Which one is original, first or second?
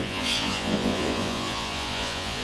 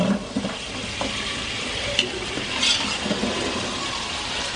second